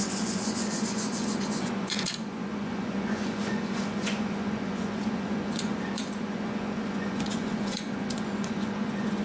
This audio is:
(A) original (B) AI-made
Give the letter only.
B